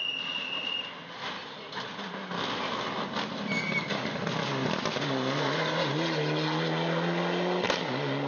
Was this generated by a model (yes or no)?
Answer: no